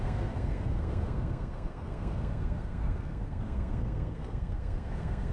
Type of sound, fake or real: fake